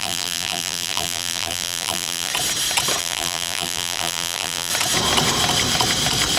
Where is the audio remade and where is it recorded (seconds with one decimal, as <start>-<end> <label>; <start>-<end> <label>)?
0.0-2.3 remade; 2.3-3.0 recorded; 3.0-4.7 remade; 4.7-6.4 recorded